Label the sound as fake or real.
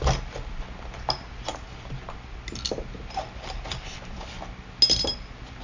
real